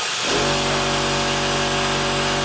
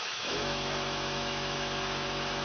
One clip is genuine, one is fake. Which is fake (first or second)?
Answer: second